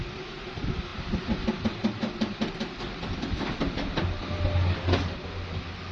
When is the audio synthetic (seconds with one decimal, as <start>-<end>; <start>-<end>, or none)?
none